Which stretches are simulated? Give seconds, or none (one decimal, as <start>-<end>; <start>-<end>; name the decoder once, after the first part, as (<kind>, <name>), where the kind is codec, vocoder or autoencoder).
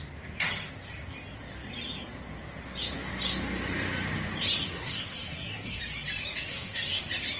4.6-5.8 (codec, SNAC); 6.5-7.0